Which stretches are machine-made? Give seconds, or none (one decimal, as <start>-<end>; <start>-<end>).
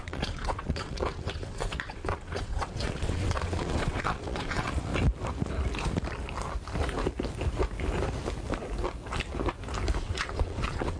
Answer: 0.0-4.9; 10.0-11.0